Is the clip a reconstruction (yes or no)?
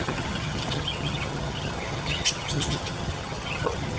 yes